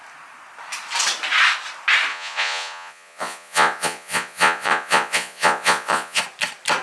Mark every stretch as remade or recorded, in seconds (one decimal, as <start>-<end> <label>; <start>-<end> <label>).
0.0-2.1 recorded; 2.1-6.2 remade; 6.2-6.8 recorded